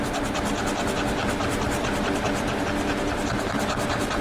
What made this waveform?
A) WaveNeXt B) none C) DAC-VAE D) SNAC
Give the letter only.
B